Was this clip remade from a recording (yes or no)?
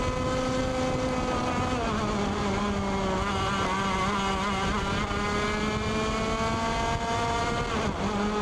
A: no